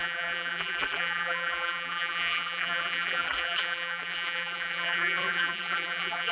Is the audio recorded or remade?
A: remade